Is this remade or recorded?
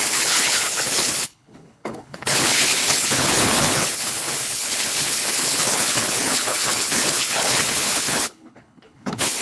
remade